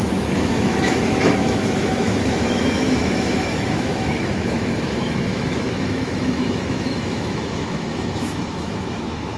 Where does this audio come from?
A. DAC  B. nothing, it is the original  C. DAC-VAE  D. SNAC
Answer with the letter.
C